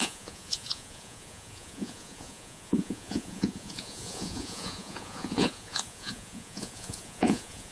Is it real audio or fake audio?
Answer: fake